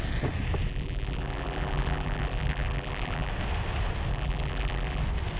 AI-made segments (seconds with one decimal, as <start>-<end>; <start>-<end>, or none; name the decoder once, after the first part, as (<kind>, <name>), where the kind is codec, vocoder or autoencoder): 0.7-3.3 (vocoder, BigVGAN v2); 4.1-5.0